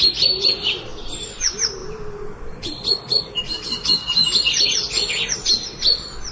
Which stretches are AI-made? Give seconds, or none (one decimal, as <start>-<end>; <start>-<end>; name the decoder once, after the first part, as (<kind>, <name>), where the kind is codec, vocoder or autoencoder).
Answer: none